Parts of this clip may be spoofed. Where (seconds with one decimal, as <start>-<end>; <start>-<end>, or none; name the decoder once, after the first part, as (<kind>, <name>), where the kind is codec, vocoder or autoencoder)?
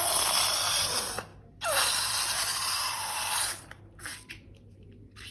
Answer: 0.0-1.3 (vocoder, BigVGAN v2); 2.0-5.3